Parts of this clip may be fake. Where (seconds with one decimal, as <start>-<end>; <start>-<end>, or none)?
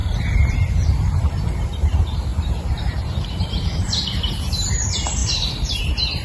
0.0-6.2